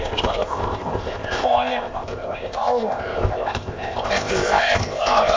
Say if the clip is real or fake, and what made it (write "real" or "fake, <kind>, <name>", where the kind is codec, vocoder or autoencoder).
fake, codec, ZipCodec